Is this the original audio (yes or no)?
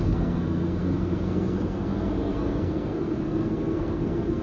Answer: no